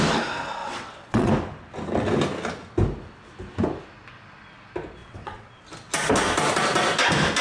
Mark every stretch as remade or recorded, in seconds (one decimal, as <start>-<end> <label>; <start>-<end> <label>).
0.0-0.6 recorded; 0.6-1.3 remade; 1.3-5.0 recorded; 5.0-5.5 remade; 5.5-7.4 recorded